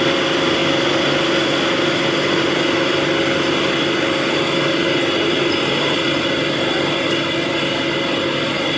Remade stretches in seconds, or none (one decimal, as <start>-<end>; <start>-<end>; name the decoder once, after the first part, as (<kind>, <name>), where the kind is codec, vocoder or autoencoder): 5.3-6.0 (vocoder, BigVGAN v2)